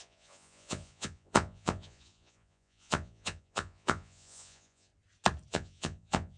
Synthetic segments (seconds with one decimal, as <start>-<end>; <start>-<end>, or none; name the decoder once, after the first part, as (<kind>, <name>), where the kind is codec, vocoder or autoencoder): 0.0-4.9 (vocoder, Vocos); 5.5-6.4